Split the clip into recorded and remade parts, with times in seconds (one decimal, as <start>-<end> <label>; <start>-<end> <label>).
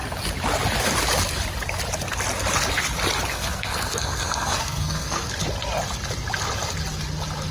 0.0-3.3 recorded; 3.3-5.3 remade; 5.3-7.5 recorded